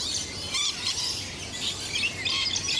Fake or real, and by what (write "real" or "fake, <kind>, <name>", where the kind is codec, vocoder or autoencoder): real